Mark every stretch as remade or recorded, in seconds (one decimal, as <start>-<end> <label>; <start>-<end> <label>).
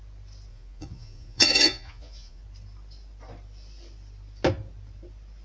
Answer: 0.0-0.5 recorded; 0.5-2.4 remade; 2.4-5.4 recorded